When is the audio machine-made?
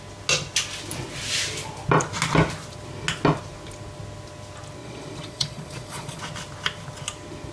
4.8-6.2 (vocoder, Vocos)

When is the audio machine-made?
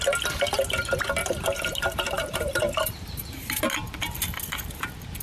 1.2-3.6 (vocoder, BigVGAN v2)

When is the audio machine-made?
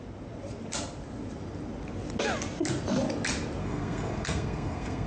3.6-5.1 (codec, SNAC)